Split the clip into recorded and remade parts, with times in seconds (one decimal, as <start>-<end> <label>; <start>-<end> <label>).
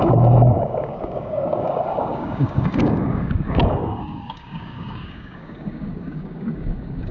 0.0-7.1 remade